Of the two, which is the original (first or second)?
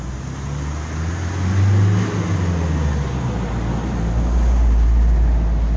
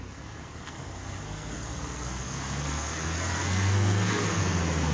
first